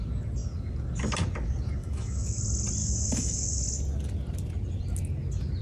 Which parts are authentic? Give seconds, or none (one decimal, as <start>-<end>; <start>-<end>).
0.0-1.8; 2.4-2.8; 3.6-5.6